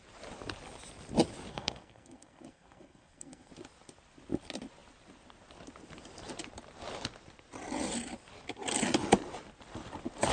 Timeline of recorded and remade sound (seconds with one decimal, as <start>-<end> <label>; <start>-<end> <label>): 0.0-1.5 recorded; 1.5-3.5 remade; 3.5-10.3 recorded